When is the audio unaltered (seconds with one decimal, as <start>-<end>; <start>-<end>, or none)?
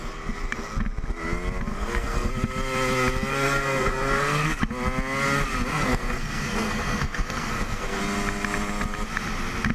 0.0-1.7; 2.3-3.3; 4.6-5.7; 8.0-9.7